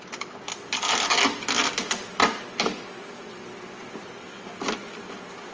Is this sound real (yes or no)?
yes